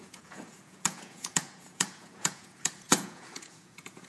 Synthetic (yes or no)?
yes